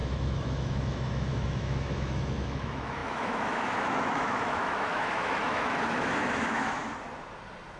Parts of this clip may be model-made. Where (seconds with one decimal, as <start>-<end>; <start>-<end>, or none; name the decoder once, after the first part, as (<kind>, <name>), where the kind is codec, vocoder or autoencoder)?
0.0-6.8 (autoencoder, DAC-VAE)